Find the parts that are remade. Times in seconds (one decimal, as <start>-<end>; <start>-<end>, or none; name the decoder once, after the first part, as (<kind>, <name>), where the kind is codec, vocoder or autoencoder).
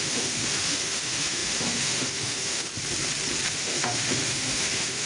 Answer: 0.0-2.7 (autoencoder, DAC-VAE); 3.5-5.1